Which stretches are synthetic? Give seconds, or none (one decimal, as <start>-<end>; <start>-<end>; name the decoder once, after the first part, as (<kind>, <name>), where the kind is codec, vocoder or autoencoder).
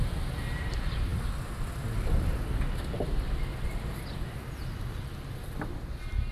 none